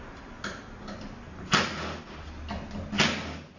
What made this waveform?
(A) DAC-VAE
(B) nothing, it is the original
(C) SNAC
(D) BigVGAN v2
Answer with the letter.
B